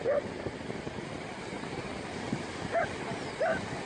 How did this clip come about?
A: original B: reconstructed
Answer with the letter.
A